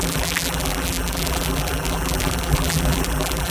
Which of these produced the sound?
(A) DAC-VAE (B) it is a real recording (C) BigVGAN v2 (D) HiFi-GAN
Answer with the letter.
C